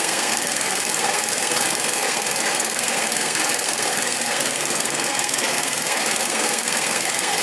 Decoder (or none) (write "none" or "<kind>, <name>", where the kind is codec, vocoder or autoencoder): codec, SNAC